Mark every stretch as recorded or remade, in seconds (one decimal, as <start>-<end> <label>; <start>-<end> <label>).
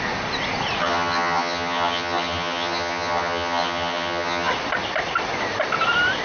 0.0-0.8 recorded; 0.8-4.5 remade; 4.5-6.2 recorded